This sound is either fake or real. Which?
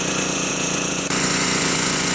fake